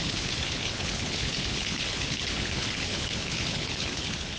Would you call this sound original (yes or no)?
no